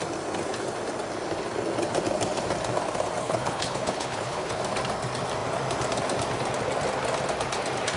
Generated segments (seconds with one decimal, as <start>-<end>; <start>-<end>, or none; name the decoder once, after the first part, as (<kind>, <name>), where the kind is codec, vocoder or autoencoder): 3.2-4.6 (codec, HILCodec)